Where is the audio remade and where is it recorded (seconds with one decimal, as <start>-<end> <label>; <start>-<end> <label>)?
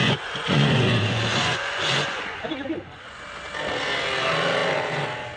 0.0-3.2 remade; 3.2-5.4 recorded